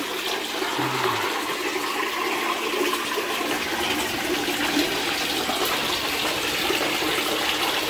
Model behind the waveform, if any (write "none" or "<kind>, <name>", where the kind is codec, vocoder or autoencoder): none